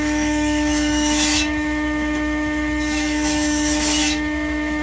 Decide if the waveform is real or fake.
fake